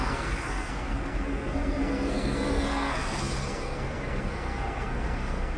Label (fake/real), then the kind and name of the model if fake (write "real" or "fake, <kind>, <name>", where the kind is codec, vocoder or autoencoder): fake, codec, SNAC